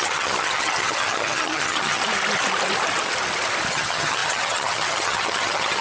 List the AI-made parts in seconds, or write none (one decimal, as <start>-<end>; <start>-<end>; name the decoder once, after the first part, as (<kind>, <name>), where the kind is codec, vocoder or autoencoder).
0.0-2.0 (vocoder, HiFi-GAN); 3.7-5.8